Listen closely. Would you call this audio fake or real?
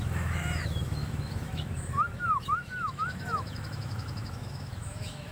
fake